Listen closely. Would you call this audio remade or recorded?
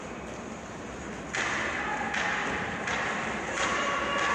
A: recorded